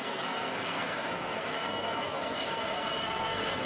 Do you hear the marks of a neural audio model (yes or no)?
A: yes